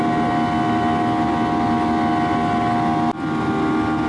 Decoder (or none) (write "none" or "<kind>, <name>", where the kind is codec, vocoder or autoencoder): none